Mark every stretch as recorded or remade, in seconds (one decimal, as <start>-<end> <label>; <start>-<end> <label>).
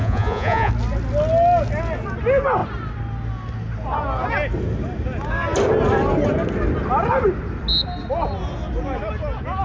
0.0-0.7 remade; 0.7-9.6 recorded